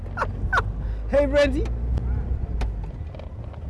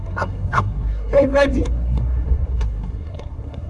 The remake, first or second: second